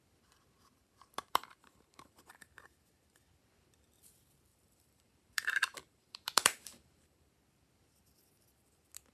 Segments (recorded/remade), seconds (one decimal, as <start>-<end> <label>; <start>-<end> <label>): 0.0-1.2 recorded; 1.2-2.3 remade; 2.3-4.5 recorded; 4.5-7.3 remade; 7.3-9.1 recorded